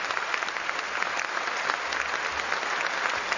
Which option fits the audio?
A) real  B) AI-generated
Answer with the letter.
A